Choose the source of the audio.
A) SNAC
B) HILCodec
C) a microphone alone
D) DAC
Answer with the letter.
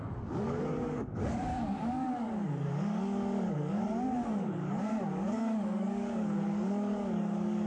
D